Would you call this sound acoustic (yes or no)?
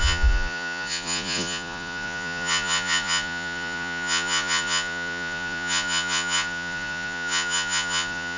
no